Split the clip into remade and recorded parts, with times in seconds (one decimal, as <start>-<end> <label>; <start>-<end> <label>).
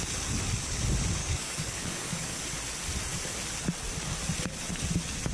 0.0-1.2 recorded; 1.2-2.4 remade; 2.4-5.3 recorded